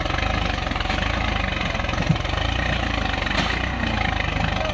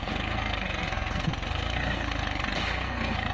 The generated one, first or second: second